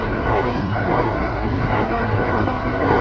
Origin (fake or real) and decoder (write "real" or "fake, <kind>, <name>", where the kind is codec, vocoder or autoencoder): fake, codec, SNAC